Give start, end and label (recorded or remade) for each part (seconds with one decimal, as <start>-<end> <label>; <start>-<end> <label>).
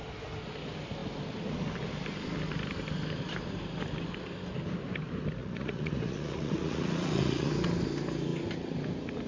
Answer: 0.0-5.4 recorded; 5.4-7.5 remade; 7.5-9.3 recorded